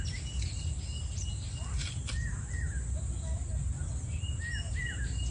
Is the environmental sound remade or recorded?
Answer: recorded